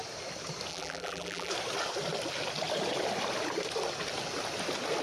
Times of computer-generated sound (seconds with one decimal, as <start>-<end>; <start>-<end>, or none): 0.7-1.5